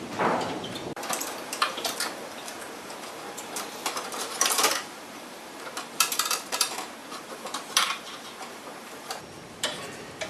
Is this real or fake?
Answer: fake